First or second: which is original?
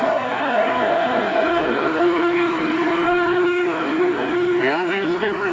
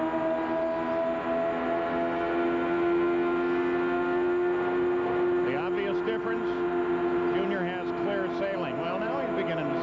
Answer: second